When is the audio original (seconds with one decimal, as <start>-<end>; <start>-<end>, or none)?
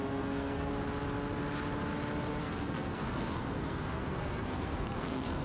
0.7-2.4